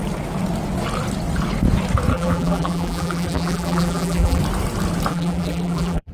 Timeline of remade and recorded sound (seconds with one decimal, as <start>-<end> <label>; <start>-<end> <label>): 0.0-2.1 recorded; 2.1-4.4 remade; 4.4-5.1 recorded; 5.1-6.1 remade